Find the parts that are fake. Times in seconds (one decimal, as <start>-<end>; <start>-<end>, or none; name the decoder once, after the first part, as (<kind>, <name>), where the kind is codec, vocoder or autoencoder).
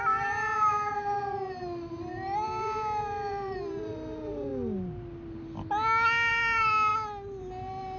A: 0.0-4.5 (vocoder, BigVGAN v2); 6.3-6.9; 7.4-8.0